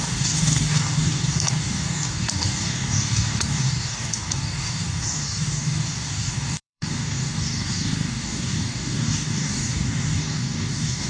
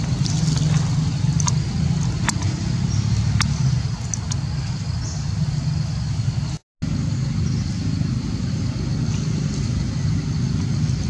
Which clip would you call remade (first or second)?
first